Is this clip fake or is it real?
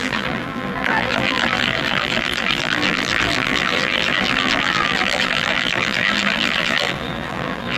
fake